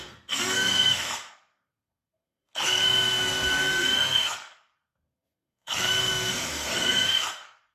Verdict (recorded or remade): remade